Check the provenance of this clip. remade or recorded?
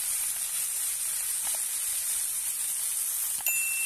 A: recorded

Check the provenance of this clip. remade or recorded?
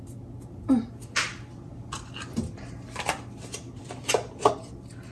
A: recorded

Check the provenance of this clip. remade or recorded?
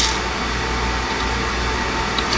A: recorded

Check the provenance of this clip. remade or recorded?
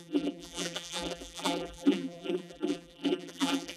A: remade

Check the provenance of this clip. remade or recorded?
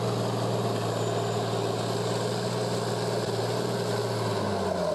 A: recorded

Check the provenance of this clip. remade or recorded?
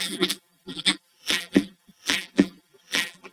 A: remade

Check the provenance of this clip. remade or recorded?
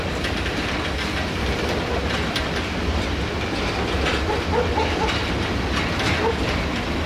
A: recorded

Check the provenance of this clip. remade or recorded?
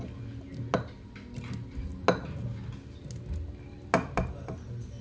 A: recorded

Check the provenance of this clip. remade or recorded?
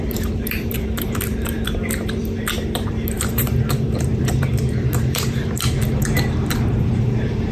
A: remade